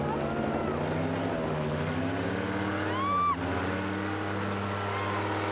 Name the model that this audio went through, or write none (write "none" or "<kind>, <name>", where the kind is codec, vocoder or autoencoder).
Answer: none